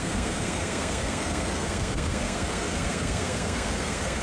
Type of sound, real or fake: fake